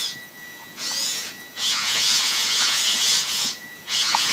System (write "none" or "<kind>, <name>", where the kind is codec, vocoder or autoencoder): vocoder, Vocos